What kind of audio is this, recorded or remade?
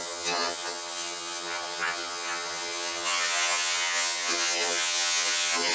remade